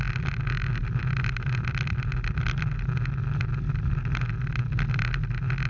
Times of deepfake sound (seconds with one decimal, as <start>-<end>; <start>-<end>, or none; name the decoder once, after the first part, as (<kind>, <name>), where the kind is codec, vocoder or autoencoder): none